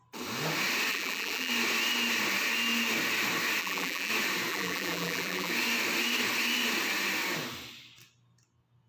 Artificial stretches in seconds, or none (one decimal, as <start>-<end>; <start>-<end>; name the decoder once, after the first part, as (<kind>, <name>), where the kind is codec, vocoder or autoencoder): 0.9-1.5 (vocoder, BigVGAN v2); 3.6-4.1; 4.5-5.5